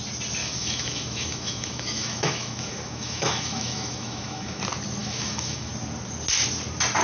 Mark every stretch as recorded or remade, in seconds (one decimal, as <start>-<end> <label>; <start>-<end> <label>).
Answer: 0.0-0.4 recorded; 0.4-4.6 remade; 4.6-5.0 recorded; 5.0-5.7 remade; 5.7-7.0 recorded